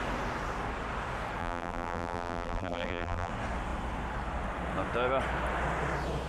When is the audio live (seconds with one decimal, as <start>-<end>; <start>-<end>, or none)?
0.0-1.4; 3.3-6.3